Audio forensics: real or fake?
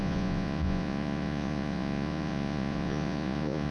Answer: fake